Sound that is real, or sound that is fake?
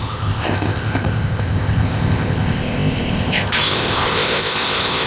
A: fake